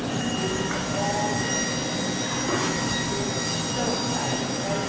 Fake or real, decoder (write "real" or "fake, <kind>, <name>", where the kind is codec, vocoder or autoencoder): real